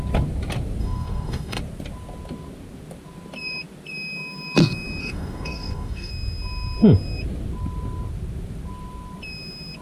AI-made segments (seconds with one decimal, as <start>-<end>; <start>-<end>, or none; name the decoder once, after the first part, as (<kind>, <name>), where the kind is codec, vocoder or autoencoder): 0.8-1.6 (codec, DAC); 5.0-6.1

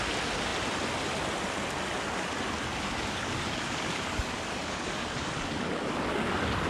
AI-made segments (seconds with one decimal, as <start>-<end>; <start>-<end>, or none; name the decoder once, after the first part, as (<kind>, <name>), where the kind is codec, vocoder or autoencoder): 2.7-6.7 (codec, DAC)